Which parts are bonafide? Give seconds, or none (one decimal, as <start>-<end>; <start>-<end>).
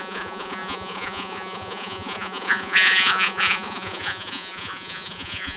none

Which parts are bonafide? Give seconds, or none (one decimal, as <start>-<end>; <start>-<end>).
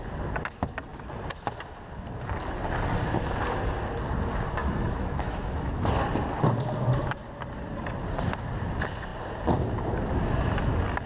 0.0-4.6; 5.9-11.1